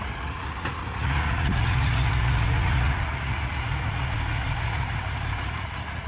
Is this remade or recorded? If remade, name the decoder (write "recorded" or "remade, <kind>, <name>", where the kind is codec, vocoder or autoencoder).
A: remade, vocoder, Vocos